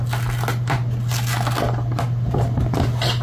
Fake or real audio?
real